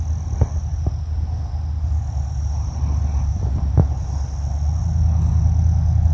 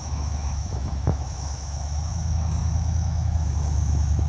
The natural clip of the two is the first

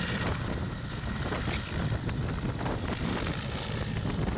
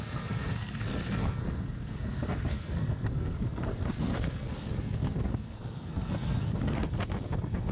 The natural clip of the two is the first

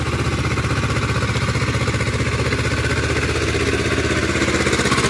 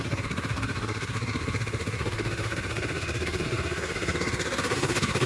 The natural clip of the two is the first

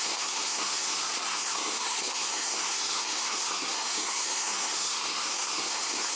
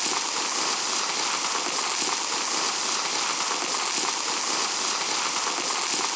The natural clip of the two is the second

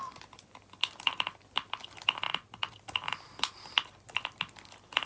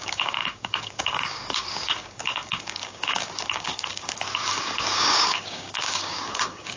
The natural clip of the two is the first